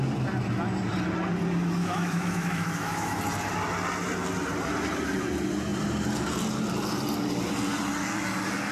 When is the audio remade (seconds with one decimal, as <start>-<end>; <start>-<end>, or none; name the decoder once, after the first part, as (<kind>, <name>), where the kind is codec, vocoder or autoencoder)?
1.8-3.2 (autoencoder, DAC-VAE)